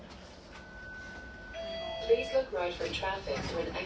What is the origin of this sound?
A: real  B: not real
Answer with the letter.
A